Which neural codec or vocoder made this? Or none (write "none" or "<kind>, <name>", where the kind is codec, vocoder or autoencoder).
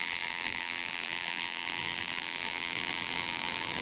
vocoder, BigVGAN v2